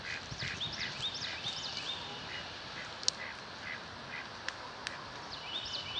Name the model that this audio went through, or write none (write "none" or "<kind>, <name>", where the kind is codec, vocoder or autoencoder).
none